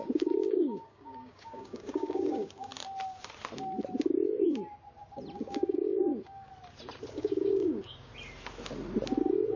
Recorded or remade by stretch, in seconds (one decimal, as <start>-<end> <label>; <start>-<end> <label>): 0.0-2.7 remade; 2.7-5.4 recorded; 5.4-6.5 remade; 6.5-7.1 recorded; 7.1-8.1 remade; 8.1-9.2 recorded; 9.2-9.6 remade